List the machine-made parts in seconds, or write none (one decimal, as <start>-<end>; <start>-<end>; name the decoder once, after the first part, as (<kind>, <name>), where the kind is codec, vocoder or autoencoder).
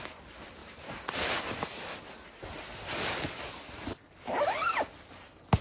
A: none